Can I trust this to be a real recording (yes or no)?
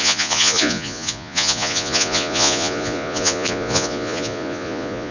no